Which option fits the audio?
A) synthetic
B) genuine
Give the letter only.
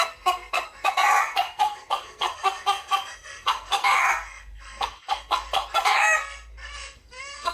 A